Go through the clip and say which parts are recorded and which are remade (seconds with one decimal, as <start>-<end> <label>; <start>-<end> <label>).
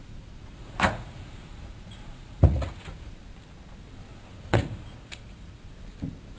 0.0-3.2 remade; 3.2-4.1 recorded; 4.1-5.6 remade; 5.6-6.4 recorded